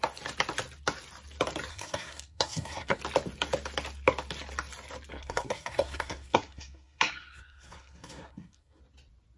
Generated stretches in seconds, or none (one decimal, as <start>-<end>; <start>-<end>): 1.7-3.0; 5.1-8.8